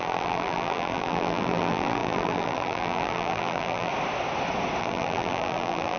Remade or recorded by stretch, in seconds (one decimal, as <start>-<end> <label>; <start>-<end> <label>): 0.0-3.9 remade; 3.9-4.8 recorded; 4.8-6.0 remade